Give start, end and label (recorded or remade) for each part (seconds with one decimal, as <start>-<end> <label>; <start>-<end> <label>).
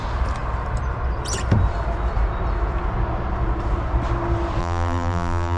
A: 0.0-4.6 recorded; 4.6-5.6 remade